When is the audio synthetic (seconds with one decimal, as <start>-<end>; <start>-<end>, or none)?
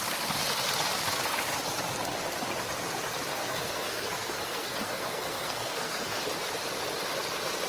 3.3-6.2